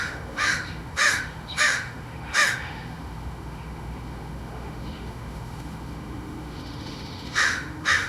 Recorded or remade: remade